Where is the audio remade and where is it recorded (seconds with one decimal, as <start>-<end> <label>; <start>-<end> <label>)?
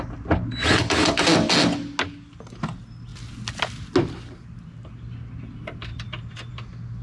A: 0.0-7.0 recorded